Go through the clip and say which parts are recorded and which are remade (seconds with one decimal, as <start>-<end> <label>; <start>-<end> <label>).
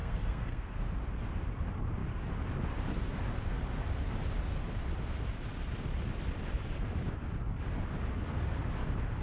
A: 0.0-0.9 remade; 0.9-9.2 recorded